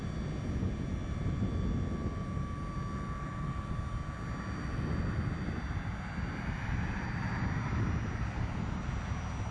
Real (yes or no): yes